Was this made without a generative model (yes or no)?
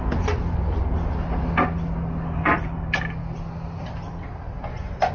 yes